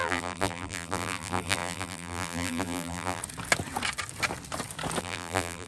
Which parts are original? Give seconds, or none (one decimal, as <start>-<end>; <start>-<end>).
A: 3.2-5.0